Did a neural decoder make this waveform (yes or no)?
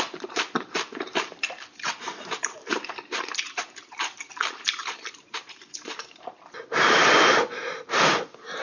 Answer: yes